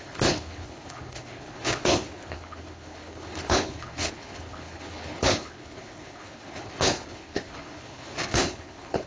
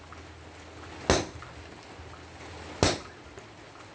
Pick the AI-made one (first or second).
first